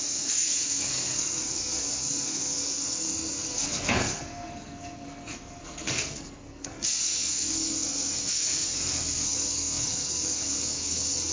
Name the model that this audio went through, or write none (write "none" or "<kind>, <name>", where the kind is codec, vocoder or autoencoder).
codec, SNAC